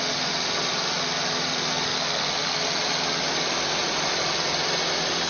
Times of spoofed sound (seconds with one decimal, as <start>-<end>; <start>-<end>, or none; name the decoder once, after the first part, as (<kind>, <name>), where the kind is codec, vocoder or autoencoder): none